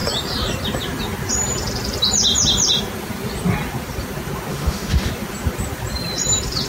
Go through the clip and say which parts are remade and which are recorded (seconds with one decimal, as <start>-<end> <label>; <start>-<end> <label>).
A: 0.0-4.5 recorded; 4.5-5.1 remade; 5.1-6.7 recorded